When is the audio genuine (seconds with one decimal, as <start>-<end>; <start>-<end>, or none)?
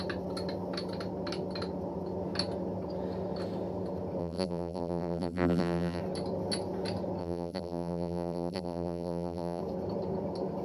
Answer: 0.0-4.2; 6.0-7.2; 9.6-10.6